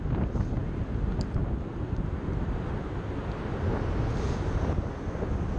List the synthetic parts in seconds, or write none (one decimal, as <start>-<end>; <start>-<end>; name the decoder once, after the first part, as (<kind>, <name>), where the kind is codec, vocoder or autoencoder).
none